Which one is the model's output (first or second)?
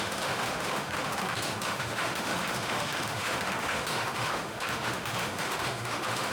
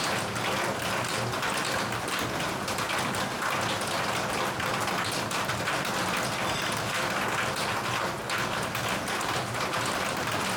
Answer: first